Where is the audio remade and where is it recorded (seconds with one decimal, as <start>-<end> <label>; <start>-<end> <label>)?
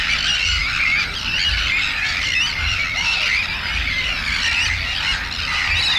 0.0-6.0 recorded